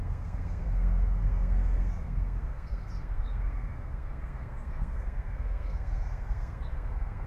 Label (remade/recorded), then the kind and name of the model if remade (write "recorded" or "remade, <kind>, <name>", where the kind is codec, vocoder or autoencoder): remade, codec, SNAC